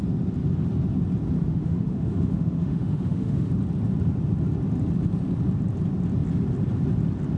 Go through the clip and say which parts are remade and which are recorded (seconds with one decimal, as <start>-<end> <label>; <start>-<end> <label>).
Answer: 0.0-1.5 recorded; 1.5-3.5 remade; 3.5-7.4 recorded